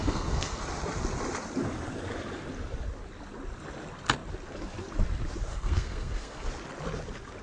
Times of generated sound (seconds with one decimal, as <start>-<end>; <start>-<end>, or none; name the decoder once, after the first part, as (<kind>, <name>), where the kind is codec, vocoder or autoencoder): 0.0-0.6 (codec, SNAC); 5.5-6.5